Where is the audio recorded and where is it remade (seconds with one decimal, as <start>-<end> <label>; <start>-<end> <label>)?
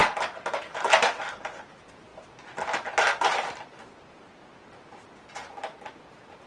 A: 0.0-6.5 recorded